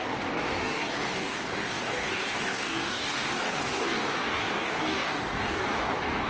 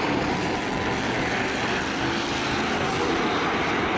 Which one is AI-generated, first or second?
first